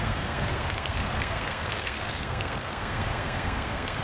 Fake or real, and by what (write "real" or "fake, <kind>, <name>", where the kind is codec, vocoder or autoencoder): fake, codec, SNAC